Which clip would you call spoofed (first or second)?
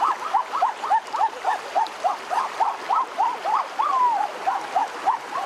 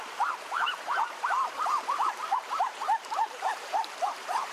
second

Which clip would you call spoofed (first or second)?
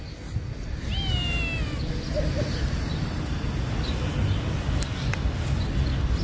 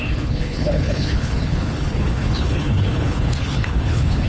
second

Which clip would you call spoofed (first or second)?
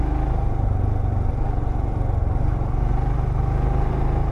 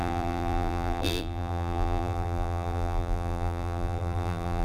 second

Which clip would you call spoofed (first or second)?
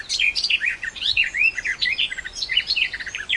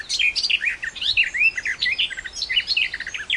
first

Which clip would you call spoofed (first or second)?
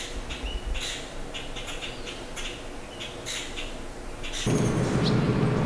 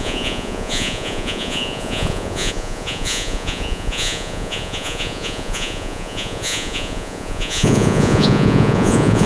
second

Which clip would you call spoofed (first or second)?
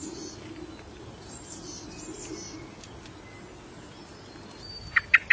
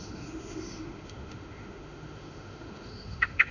second